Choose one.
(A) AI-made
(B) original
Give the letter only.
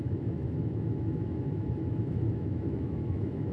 A